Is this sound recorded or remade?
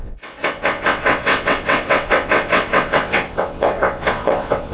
remade